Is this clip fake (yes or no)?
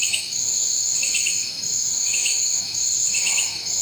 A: yes